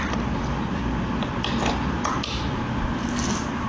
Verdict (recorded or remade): recorded